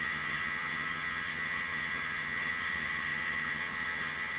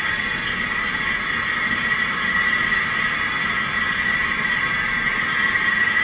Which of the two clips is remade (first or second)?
first